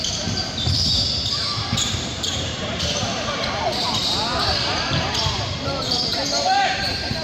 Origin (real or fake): fake